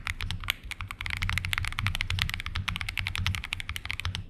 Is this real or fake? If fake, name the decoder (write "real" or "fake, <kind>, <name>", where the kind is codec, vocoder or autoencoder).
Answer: real